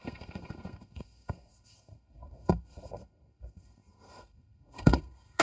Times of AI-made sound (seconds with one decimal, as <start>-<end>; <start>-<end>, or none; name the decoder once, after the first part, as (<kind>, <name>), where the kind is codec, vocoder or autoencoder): 0.0-5.4 (codec, SNAC)